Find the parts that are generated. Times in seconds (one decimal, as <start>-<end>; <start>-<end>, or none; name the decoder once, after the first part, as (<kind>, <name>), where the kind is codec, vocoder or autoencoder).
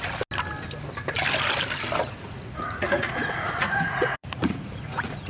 2.0-5.3 (vocoder, Vocos)